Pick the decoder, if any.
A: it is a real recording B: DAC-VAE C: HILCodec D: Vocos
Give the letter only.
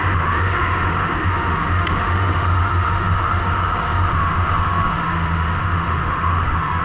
B